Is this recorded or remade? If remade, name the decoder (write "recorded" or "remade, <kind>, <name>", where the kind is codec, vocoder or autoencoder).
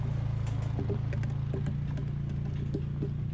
recorded